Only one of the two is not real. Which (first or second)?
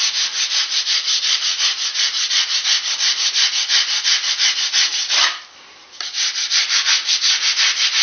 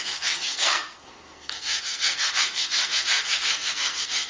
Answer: second